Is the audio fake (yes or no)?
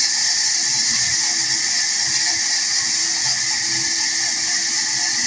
no